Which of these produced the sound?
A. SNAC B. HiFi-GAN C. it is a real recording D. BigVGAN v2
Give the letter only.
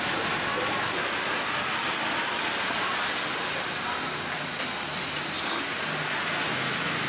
C